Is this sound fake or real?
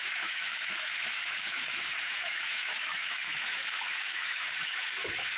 fake